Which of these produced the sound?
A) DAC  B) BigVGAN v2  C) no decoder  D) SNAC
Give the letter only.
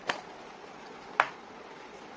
C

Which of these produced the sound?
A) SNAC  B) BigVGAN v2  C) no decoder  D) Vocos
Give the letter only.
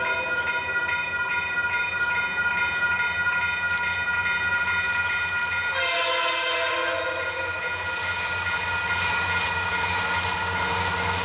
C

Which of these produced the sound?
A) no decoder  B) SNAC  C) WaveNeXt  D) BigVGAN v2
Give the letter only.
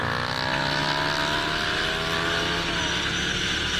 A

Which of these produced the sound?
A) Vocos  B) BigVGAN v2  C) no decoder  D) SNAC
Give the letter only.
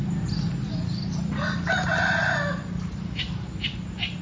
C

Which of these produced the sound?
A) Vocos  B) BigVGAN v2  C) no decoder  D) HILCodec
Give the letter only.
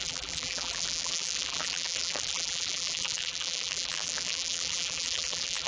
B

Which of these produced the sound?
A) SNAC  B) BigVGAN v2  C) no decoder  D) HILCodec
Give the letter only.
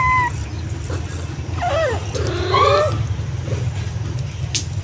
C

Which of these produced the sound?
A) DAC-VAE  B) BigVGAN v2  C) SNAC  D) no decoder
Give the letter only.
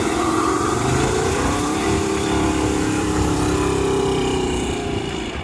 B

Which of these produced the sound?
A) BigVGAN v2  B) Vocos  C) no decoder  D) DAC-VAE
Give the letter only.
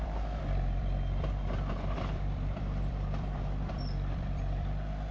A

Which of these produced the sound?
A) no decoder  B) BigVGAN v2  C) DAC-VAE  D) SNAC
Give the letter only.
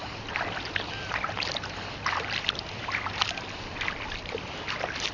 B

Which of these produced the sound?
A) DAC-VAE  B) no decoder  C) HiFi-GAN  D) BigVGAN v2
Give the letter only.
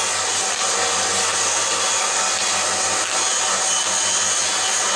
B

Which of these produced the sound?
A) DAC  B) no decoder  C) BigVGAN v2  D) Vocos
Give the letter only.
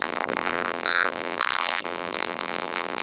C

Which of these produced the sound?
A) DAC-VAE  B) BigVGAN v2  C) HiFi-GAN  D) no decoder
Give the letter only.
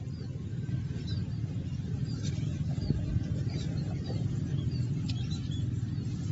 D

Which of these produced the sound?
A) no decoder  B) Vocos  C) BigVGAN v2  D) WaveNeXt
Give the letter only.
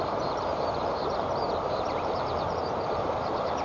C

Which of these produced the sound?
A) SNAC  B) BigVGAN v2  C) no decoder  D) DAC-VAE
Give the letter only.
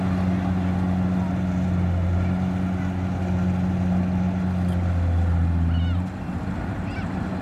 C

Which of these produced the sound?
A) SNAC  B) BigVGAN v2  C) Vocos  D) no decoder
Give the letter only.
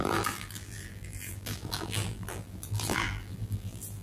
B